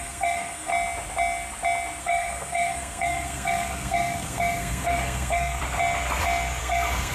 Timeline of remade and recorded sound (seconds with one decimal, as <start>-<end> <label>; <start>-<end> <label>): 0.0-0.7 remade; 0.7-2.0 recorded; 2.0-5.6 remade; 5.6-6.6 recorded; 6.6-7.1 remade